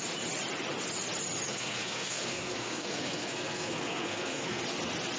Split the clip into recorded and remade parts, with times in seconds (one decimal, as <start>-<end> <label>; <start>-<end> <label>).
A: 0.0-1.5 recorded; 1.5-4.6 remade; 4.6-5.2 recorded